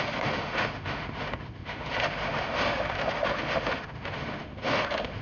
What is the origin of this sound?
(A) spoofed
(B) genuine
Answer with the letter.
A